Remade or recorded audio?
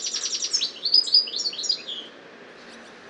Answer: recorded